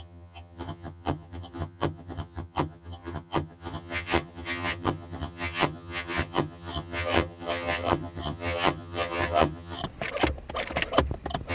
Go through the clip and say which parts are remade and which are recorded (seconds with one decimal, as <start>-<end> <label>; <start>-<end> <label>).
0.0-9.8 remade; 9.8-11.5 recorded